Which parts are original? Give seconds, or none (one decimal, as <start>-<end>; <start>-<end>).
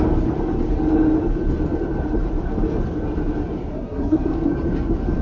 0.0-3.7; 4.3-5.2